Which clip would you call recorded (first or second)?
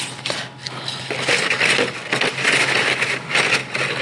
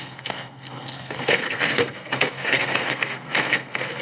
first